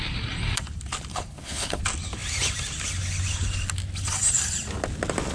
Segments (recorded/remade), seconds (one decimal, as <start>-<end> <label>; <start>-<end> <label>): 0.0-1.1 recorded; 1.1-1.8 remade; 1.8-5.3 recorded